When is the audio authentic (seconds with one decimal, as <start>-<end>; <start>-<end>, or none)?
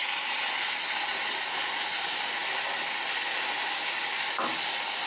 0.0-5.1